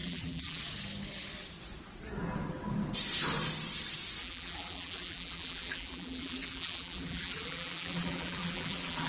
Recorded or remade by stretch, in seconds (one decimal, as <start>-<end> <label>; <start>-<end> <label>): 0.0-0.6 remade; 0.6-4.2 recorded; 4.2-9.1 remade